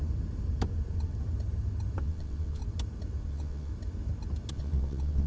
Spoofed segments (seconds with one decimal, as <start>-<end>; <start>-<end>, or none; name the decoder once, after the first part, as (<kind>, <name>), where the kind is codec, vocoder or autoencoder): 2.0-2.6 (vocoder, WaveNeXt); 3.3-3.7; 4.5-5.3